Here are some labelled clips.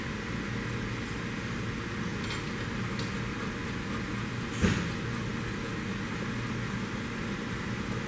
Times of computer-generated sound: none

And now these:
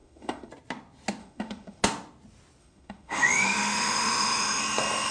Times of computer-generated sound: 0.0-0.5 (autoencoder, DAC-VAE); 1.2-1.8; 2.6-4.6

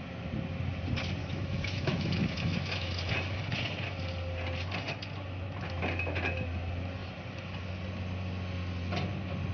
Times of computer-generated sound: 1.2-3.1 (autoencoder, DAC-VAE)

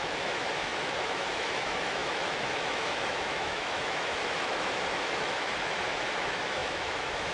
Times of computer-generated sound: 0.0-7.3 (autoencoder, DAC-VAE)

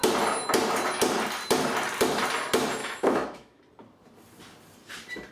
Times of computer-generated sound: 2.8-3.6 (autoencoder, DAC-VAE)

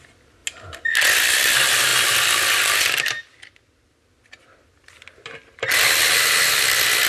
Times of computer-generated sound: none

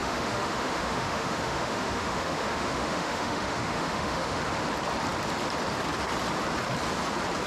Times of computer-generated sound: 0.0-4.4 (autoencoder, DAC-VAE)

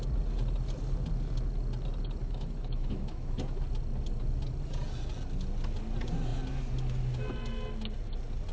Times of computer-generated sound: 2.2-3.6 (autoencoder, DAC-VAE)